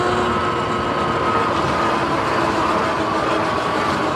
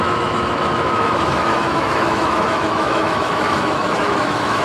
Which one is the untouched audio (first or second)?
first